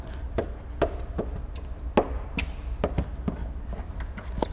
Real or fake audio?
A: real